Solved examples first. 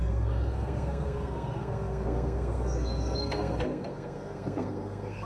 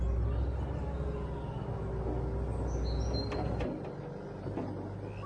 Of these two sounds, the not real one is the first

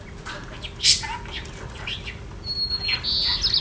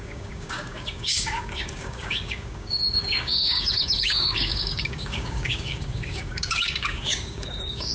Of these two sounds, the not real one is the second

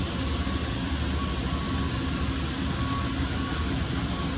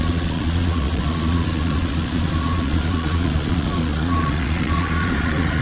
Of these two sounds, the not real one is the second